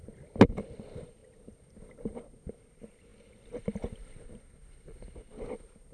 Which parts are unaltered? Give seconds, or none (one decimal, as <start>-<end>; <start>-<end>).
0.0-5.9